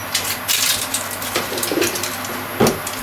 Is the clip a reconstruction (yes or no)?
no